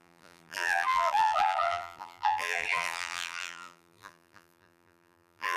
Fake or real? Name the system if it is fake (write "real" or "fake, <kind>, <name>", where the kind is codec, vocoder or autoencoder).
fake, vocoder, BigVGAN v2